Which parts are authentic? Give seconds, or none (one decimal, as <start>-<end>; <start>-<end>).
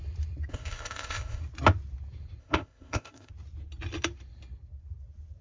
0.0-0.5; 1.4-2.4; 3.3-5.4